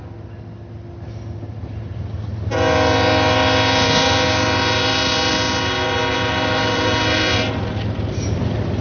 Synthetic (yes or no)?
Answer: no